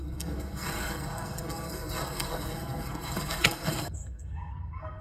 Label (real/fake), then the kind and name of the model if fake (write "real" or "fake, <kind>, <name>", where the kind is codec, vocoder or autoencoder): fake, codec, SNAC